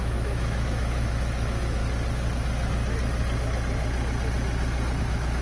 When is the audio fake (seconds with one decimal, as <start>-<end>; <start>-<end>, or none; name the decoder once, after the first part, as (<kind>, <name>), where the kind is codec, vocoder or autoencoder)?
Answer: 0.0-1.8 (autoencoder, DAC-VAE); 5.0-5.4